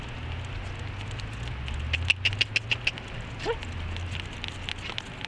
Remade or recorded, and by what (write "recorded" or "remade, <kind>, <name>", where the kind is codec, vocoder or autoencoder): recorded